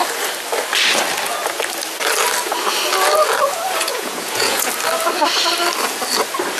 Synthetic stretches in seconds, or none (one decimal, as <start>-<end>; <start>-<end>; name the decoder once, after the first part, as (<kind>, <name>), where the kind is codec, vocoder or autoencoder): 3.9-4.7 (vocoder, Vocos)